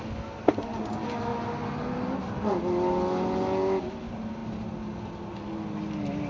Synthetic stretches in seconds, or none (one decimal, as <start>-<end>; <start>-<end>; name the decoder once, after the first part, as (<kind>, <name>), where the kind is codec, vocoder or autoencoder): none